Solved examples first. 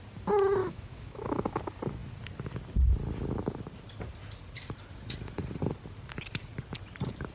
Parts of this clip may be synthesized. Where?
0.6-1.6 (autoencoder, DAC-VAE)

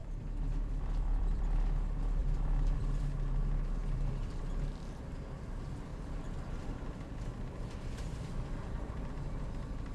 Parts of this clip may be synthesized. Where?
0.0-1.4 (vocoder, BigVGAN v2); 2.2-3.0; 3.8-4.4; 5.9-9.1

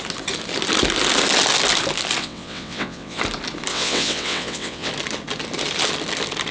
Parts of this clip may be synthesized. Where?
2.2-3.2 (vocoder, WaveNeXt); 3.7-4.9

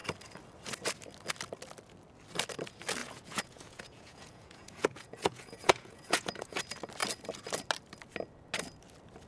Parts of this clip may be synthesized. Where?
3.0-6.6 (vocoder, Vocos)

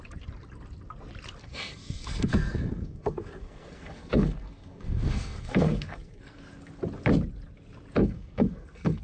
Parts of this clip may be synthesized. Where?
1.4-6.4 (codec, SNAC); 8.0-9.0

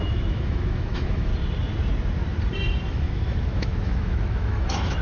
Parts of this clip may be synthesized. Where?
0.0-1.3 (autoencoder, DAC-VAE); 2.9-5.0

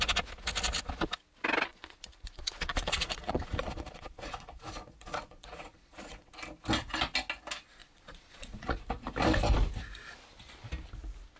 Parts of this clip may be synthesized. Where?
1.7-6.3 (vocoder, Vocos); 7.8-8.9

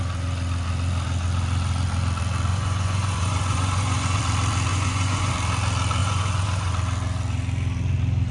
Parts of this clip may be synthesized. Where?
2.5-4.2 (vocoder, Vocos); 4.7-5.3; 6.0-6.7